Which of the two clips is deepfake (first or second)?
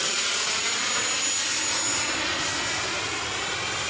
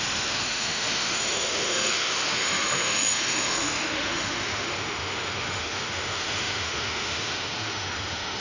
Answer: second